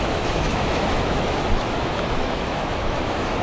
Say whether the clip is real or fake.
fake